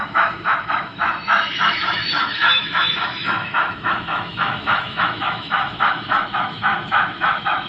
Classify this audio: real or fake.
fake